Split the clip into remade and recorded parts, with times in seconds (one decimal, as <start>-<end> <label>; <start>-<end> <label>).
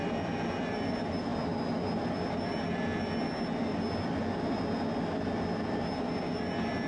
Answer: 0.0-6.9 recorded